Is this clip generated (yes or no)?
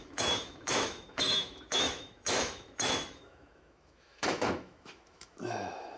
yes